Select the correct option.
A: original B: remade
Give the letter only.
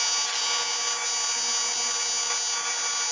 A